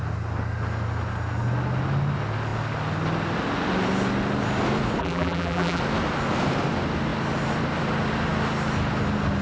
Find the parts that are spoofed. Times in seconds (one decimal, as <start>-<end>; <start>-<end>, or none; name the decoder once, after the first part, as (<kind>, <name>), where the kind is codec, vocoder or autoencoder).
5.0-5.8 (vocoder, BigVGAN v2)